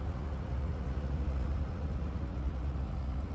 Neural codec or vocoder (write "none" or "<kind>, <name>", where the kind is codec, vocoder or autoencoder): vocoder, Vocos